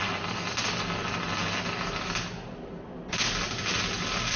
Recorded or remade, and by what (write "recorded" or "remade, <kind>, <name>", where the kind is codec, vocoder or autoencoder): recorded